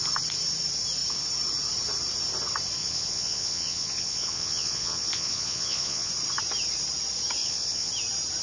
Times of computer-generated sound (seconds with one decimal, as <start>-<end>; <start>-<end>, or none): 2.8-6.1; 7.4-7.9